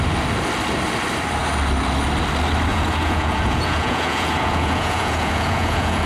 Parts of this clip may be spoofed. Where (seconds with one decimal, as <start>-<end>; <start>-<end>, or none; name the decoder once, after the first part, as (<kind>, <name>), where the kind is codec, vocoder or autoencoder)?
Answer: 2.7-6.1 (vocoder, Vocos)